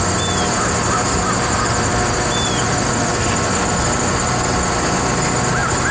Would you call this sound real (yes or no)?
yes